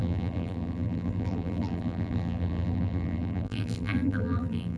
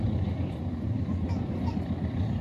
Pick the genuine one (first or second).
second